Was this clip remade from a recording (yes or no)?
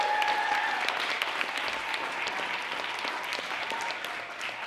no